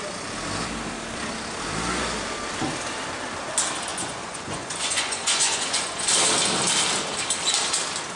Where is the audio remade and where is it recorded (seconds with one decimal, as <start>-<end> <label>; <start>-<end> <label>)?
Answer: 0.0-3.9 recorded; 3.9-6.1 remade; 6.1-8.2 recorded